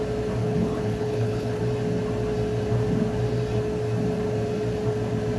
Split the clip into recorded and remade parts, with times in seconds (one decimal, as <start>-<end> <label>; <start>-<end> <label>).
0.0-0.4 recorded; 0.4-1.6 remade; 1.6-5.4 recorded